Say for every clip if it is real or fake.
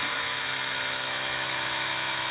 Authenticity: fake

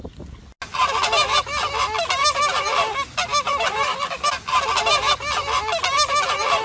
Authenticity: real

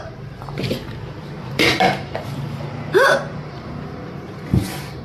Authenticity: fake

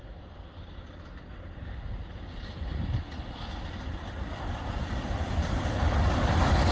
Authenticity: real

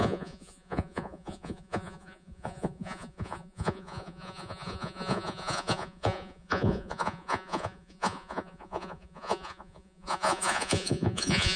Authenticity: fake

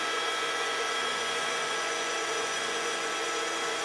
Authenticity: fake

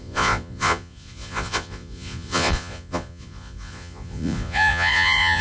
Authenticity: fake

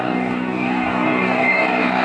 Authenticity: fake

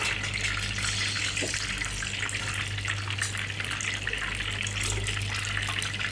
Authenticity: real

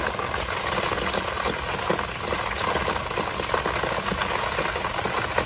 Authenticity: real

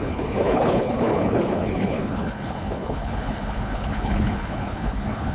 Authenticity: fake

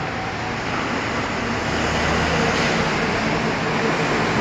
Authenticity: real